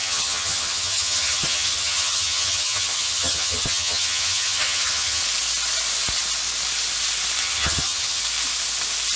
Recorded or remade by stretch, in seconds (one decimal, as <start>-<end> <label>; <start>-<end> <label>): 0.0-5.2 remade; 5.2-7.4 recorded; 7.4-8.2 remade; 8.2-9.2 recorded